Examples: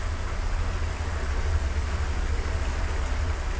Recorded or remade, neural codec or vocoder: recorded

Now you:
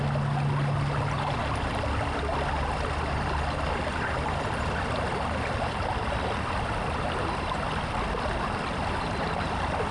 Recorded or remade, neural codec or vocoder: recorded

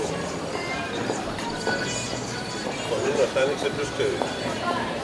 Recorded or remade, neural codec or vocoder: remade, vocoder, BigVGAN v2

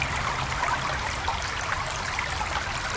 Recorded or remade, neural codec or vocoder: recorded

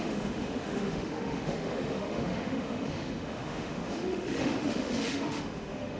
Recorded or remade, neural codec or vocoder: remade, autoencoder, DAC-VAE